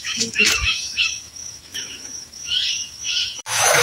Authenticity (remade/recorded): remade